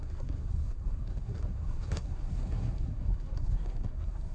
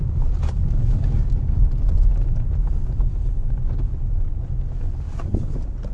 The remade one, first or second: first